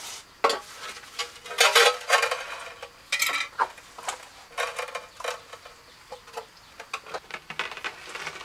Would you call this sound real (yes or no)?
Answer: yes